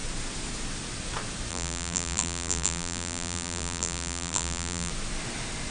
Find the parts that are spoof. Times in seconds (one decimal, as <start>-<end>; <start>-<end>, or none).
1.5-4.9